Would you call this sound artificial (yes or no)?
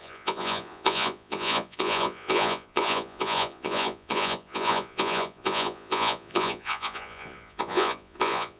yes